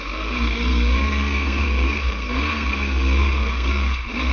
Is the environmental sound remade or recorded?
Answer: remade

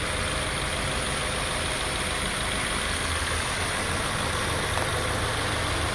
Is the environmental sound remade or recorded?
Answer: recorded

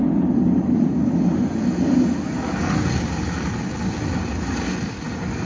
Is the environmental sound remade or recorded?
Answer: recorded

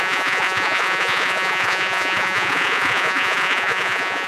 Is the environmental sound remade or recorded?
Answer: remade